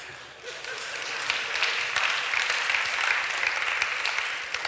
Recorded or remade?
recorded